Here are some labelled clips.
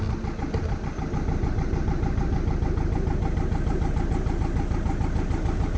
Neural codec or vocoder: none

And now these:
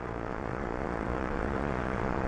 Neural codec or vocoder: vocoder, Vocos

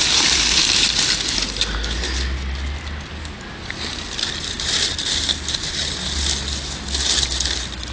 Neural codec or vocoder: none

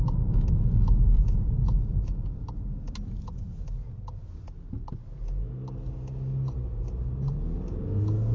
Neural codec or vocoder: none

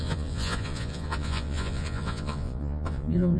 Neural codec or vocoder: vocoder, Vocos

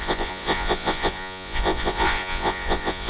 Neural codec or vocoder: vocoder, Vocos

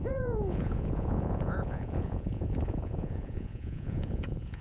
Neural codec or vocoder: vocoder, Vocos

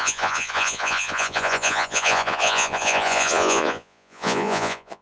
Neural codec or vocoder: vocoder, Vocos